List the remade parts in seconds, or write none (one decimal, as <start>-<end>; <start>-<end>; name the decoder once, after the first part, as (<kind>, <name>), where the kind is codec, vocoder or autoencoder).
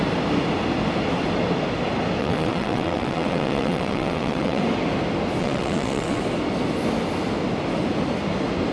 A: 2.2-4.6 (vocoder, WaveNeXt); 5.4-6.2